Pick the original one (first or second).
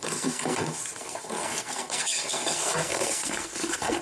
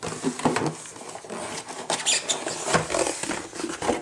second